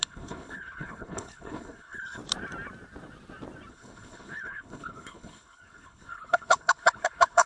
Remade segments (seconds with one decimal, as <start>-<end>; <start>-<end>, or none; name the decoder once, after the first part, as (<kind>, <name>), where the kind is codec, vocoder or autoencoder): 0.0-2.2 (codec, HILCodec); 3.7-7.5

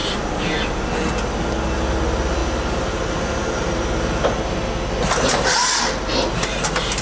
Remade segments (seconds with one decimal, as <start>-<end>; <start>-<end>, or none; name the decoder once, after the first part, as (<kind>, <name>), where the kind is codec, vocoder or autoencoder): none